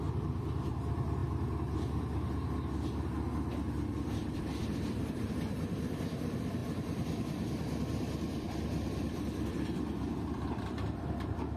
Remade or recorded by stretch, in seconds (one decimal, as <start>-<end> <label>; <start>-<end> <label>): 0.0-1.2 remade; 1.2-3.9 recorded; 3.9-11.6 remade